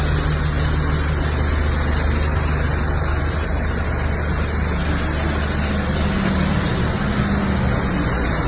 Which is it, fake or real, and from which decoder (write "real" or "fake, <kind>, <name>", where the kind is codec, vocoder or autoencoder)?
real